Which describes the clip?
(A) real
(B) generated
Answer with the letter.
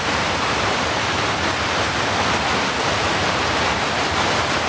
A